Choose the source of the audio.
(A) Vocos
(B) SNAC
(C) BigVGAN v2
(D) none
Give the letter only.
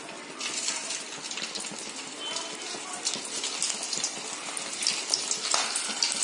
D